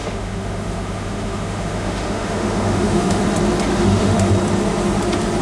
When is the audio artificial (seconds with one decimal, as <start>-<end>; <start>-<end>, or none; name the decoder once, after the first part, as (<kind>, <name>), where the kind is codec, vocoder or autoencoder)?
0.0-3.2 (autoencoder, DAC-VAE); 3.7-4.3